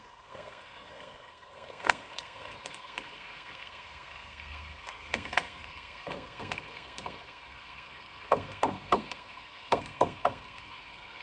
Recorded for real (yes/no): no